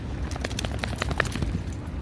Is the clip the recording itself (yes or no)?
yes